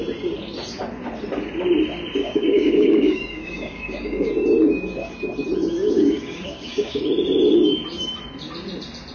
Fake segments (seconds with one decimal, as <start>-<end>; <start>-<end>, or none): 2.2-4.3; 5.8-7.0